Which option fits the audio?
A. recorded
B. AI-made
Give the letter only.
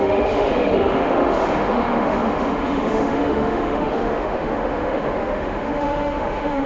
B